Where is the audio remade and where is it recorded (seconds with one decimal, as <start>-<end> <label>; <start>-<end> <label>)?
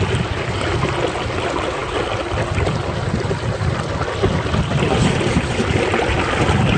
0.0-6.8 recorded